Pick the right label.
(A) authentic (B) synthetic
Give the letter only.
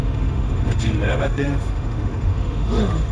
B